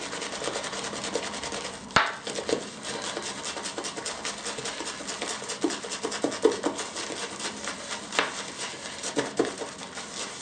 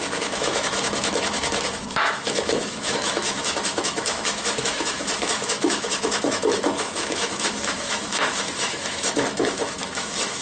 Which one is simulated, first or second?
second